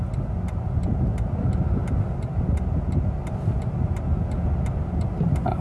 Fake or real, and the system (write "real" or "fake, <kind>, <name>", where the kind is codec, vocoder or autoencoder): real